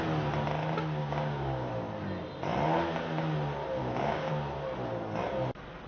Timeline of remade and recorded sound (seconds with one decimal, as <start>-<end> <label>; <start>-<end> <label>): 0.0-1.0 recorded; 1.0-1.7 remade; 1.7-3.8 recorded; 3.8-4.3 remade; 4.3-5.9 recorded